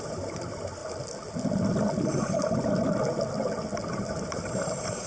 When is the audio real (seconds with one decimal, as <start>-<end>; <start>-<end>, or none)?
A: 0.8-3.9